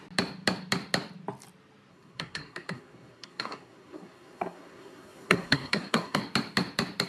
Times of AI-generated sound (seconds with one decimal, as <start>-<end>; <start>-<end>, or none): 1.9-6.2